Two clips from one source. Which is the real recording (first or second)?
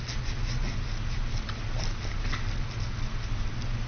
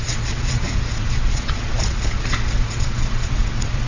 first